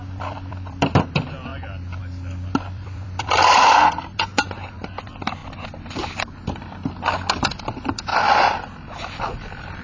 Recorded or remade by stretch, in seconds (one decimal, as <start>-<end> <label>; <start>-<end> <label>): 0.0-5.4 remade; 5.4-7.3 recorded; 7.3-8.1 remade; 8.1-9.2 recorded; 9.2-9.8 remade